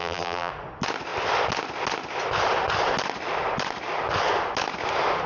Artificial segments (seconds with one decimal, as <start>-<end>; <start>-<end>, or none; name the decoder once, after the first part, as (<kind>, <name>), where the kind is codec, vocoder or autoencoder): 0.0-0.5 (vocoder, BigVGAN v2)